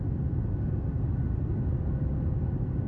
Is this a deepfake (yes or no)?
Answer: no